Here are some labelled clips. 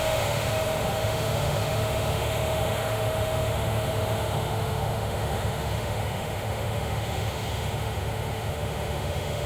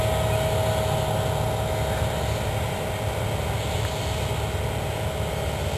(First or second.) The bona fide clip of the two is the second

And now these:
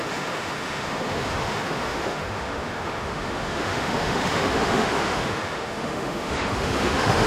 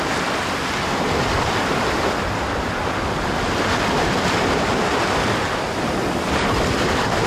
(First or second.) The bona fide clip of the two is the second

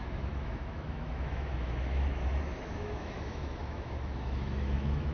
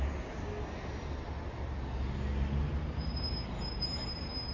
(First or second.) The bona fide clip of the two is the second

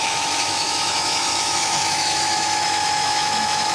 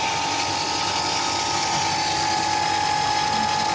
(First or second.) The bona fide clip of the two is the second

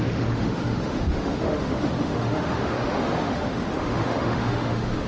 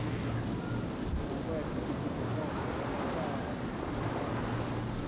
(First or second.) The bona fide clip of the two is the second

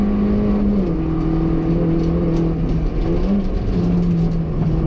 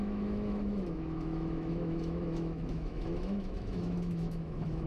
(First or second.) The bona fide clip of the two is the first